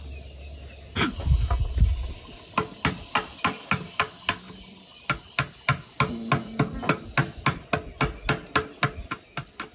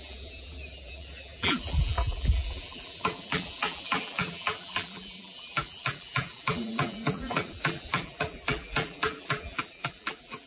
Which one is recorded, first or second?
first